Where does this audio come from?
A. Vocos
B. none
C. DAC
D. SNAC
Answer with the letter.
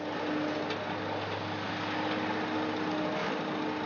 B